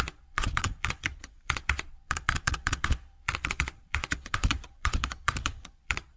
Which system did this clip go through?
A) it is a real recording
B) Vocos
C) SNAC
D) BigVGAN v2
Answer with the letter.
B